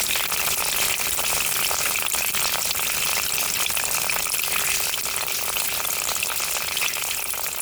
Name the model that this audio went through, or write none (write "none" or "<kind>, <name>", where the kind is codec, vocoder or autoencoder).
none